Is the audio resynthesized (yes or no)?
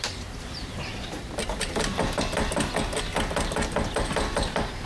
no